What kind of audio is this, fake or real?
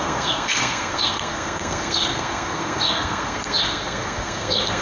fake